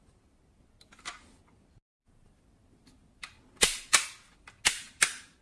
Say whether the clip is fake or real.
real